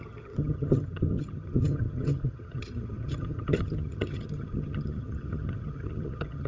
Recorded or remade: remade